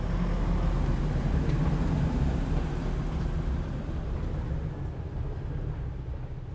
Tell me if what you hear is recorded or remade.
recorded